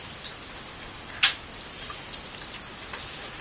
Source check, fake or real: real